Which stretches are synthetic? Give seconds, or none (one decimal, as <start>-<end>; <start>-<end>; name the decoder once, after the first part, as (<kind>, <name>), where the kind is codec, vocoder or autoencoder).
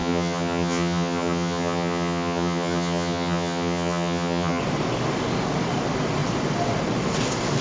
0.0-4.6 (vocoder, HiFi-GAN)